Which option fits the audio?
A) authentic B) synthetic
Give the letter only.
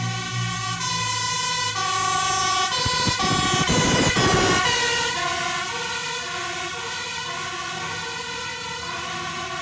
A